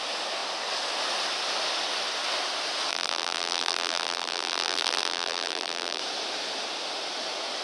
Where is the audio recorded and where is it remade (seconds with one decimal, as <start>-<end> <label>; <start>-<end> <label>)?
0.0-2.9 recorded; 2.9-6.0 remade; 6.0-7.6 recorded